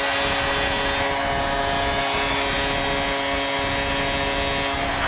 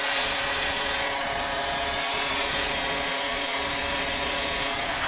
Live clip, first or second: first